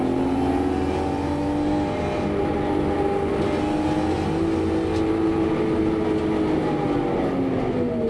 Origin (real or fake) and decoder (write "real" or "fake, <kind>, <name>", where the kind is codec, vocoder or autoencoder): real